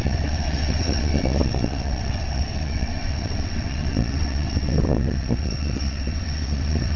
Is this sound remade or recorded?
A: remade